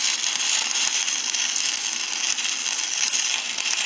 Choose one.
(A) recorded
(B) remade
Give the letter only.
A